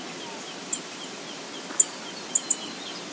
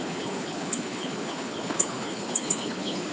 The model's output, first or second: second